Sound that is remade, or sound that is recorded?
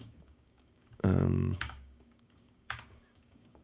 remade